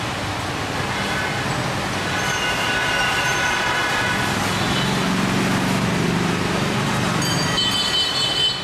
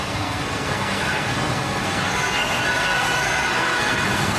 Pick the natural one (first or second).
first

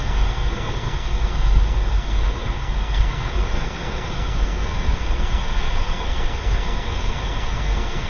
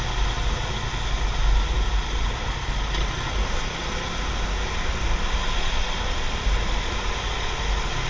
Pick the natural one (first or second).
second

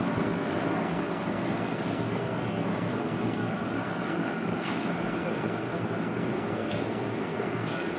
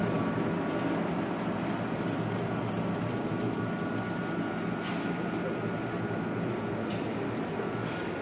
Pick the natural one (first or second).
second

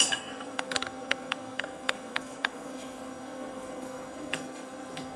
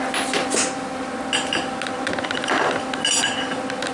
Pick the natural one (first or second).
second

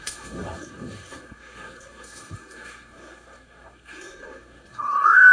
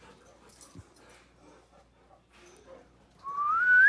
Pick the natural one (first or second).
second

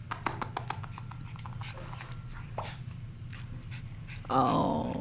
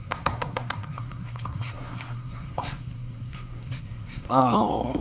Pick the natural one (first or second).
first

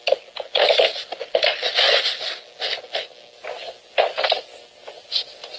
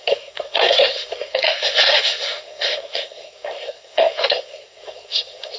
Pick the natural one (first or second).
first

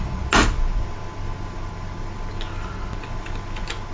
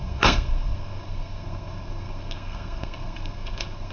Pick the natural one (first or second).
first